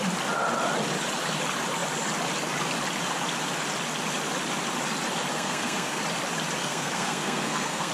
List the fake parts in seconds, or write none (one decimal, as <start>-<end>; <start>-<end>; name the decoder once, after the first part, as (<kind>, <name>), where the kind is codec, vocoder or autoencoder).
5.3-6.0 (codec, SNAC); 6.6-7.9